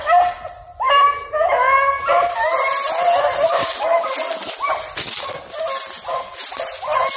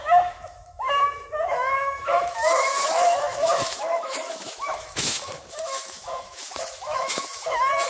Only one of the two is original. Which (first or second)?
first